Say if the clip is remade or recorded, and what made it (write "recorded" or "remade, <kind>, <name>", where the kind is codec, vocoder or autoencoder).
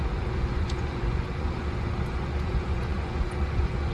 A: remade, vocoder, Vocos